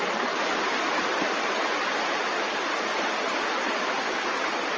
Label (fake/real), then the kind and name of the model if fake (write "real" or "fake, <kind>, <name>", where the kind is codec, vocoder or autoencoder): real